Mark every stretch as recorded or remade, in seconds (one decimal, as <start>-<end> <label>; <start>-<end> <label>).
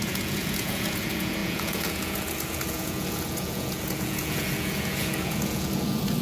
0.0-6.2 remade